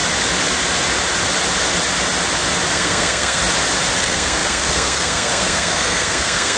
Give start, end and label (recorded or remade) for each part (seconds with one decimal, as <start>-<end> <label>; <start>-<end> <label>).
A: 0.0-2.7 recorded; 2.7-3.4 remade; 3.4-4.0 recorded; 4.0-6.6 remade